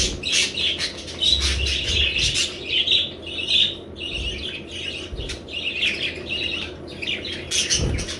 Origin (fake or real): real